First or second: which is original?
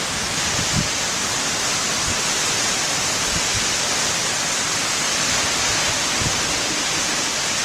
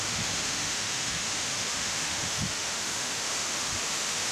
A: first